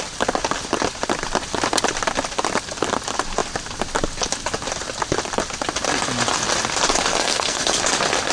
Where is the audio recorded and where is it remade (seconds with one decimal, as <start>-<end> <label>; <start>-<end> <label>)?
0.0-7.1 recorded; 7.1-7.8 remade; 7.8-8.3 recorded